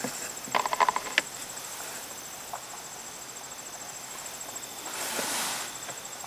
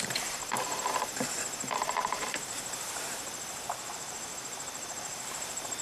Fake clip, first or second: second